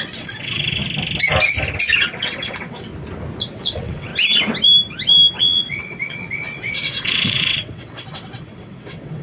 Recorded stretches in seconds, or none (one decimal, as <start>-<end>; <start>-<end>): 0.8-2.2; 2.9-3.4; 4.1-5.4